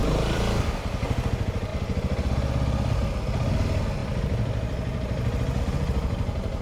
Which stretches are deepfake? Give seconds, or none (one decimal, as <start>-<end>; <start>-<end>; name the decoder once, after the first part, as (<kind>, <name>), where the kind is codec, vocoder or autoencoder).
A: 0.0-0.8 (vocoder, BigVGAN v2); 4.0-5.6